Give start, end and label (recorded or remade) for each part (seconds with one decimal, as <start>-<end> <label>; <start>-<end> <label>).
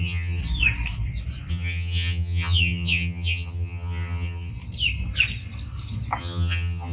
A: 0.0-0.4 remade; 0.4-1.5 recorded; 1.5-4.5 remade; 4.5-6.2 recorded; 6.2-6.9 remade